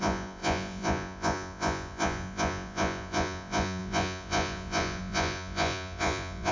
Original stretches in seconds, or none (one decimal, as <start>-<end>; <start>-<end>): none